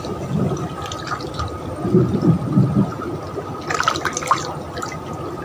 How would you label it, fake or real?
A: real